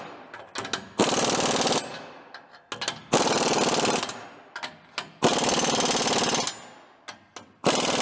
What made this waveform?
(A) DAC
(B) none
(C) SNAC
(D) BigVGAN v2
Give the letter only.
B